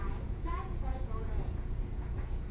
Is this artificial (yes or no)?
yes